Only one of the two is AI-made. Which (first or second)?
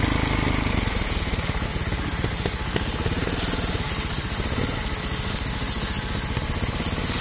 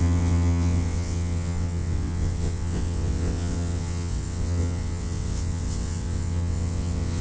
second